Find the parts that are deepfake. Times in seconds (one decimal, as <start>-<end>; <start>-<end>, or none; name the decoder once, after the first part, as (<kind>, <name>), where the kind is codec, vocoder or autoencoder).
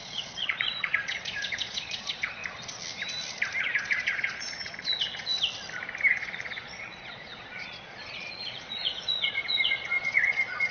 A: 0.0-2.4 (vocoder, Vocos); 3.6-5.3; 6.1-10.7